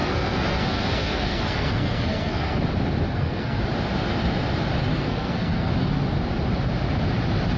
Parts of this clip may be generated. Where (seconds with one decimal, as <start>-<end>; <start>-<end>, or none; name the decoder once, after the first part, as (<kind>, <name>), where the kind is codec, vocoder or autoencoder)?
0.0-2.6 (codec, SNAC); 3.1-3.6; 4.9-5.7